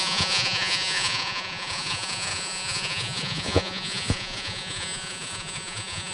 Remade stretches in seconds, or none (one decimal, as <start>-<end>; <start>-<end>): 0.0-6.1